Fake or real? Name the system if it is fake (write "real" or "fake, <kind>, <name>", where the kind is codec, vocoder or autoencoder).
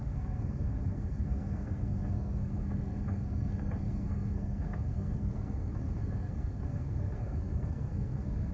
fake, codec, SNAC